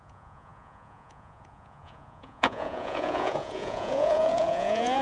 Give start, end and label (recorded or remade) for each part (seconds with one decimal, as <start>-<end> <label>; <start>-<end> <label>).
0.0-5.0 remade